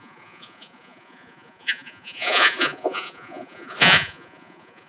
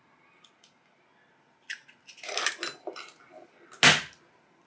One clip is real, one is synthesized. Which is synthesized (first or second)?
first